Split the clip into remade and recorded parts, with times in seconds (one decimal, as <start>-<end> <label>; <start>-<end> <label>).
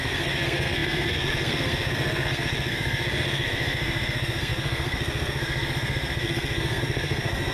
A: 0.0-7.5 remade